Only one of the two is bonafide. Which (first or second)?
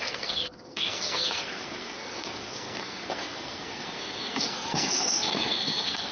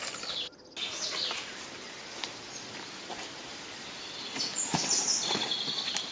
second